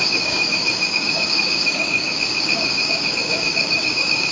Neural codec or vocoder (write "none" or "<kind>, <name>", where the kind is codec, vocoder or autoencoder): codec, DAC